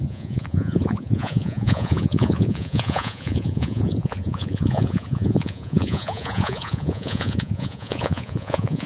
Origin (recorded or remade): remade